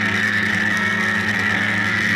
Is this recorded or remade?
remade